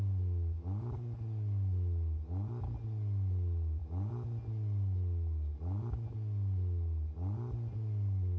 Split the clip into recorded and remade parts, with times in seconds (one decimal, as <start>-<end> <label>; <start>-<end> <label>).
0.0-8.4 recorded